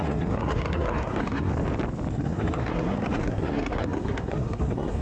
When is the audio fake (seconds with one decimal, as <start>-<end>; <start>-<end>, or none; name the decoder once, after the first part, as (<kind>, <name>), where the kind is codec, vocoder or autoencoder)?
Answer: 0.0-1.5 (codec, SNAC); 2.1-5.0